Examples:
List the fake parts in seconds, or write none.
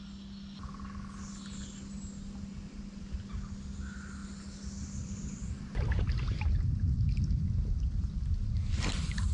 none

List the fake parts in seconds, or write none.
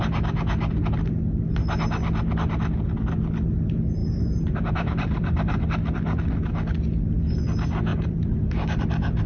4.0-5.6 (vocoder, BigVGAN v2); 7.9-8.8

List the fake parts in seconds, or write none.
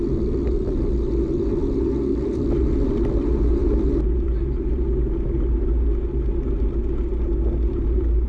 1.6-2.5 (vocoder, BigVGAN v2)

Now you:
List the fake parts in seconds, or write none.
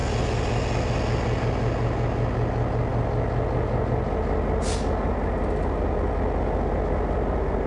none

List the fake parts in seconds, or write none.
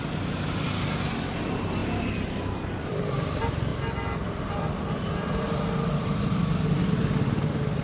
0.0-3.7 (vocoder, BigVGAN v2); 4.5-7.8